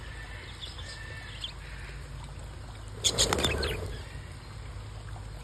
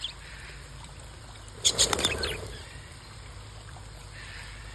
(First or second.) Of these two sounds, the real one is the first